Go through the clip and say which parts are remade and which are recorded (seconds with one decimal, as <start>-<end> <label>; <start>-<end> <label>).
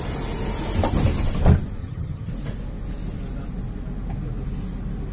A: 0.0-1.8 recorded; 1.8-2.3 remade; 2.3-5.1 recorded